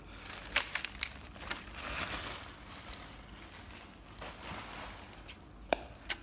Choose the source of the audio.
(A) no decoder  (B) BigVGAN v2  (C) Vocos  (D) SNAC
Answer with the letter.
A